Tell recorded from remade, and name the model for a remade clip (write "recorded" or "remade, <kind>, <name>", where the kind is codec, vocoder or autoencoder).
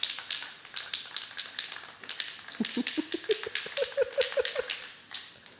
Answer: recorded